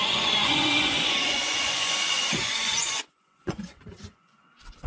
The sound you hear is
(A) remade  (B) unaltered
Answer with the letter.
A